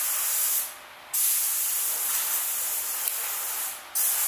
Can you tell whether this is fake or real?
real